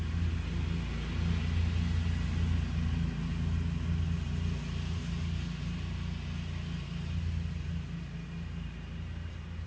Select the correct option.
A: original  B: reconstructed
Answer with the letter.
A